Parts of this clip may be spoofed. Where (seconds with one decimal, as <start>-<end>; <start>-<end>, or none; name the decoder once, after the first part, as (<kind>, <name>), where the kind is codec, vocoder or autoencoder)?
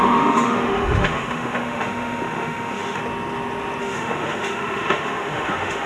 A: 0.0-3.0 (autoencoder, DAC-VAE); 3.8-5.9